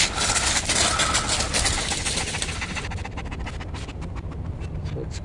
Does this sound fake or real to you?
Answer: real